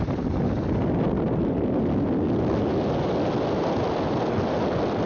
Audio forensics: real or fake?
real